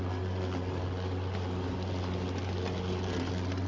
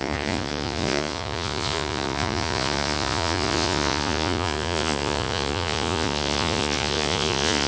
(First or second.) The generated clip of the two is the second